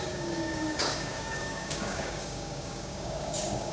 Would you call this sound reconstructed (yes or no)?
yes